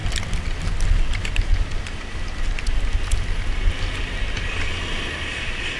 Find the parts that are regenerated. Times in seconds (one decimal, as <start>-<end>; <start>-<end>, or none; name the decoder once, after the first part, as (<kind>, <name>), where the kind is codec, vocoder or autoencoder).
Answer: none